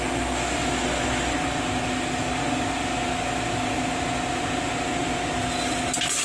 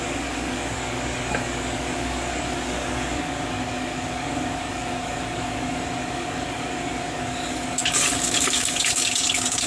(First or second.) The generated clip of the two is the second